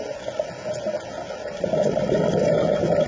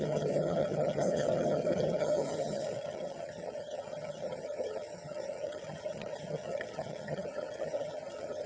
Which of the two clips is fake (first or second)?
second